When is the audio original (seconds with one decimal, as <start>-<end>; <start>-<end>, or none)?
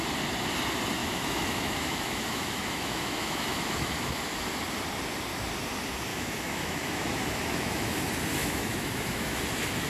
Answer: 0.0-1.0; 4.2-6.1; 8.0-8.4; 9.4-9.9